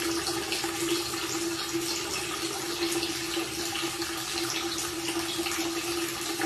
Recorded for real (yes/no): yes